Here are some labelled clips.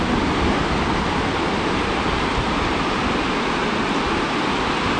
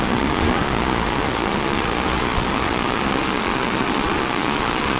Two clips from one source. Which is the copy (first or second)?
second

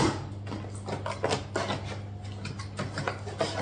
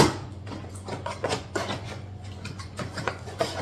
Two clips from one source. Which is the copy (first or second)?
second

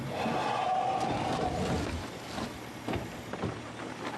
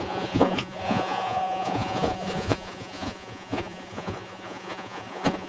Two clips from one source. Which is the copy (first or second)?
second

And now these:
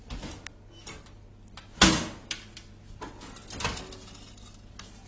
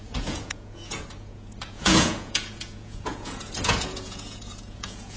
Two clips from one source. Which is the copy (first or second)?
second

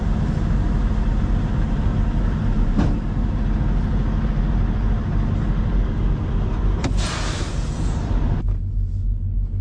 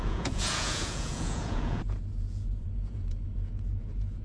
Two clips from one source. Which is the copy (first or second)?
second